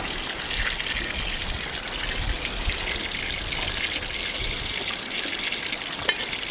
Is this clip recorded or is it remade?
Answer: recorded